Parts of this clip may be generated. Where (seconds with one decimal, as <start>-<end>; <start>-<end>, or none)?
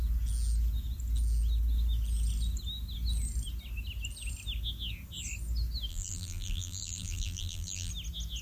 5.9-7.9